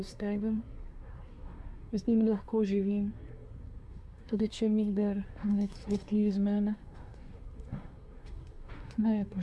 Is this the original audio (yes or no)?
no